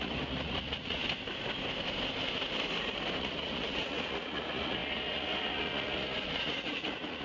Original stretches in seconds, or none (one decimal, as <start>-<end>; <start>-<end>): 1.0-3.2